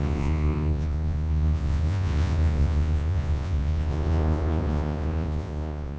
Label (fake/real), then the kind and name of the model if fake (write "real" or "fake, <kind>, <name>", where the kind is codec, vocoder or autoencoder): fake, vocoder, Vocos